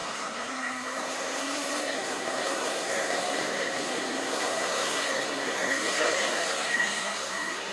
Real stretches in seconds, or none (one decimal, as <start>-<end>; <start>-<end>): none